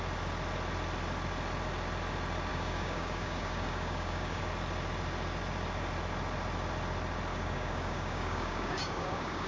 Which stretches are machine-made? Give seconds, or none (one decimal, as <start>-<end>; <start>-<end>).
2.5-4.4; 7.3-9.5